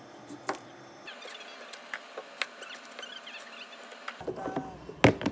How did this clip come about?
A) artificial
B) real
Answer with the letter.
B